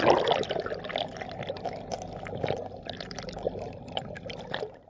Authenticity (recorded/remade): recorded